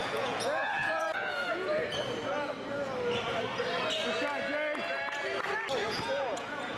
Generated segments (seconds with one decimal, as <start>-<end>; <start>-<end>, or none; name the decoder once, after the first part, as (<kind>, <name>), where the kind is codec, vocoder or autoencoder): 0.0-1.8 (vocoder, Vocos); 5.9-6.8